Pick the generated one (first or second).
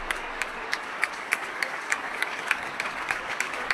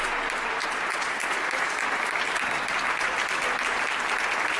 first